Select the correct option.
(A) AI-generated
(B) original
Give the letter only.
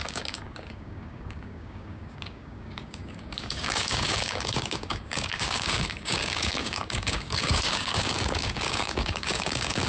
A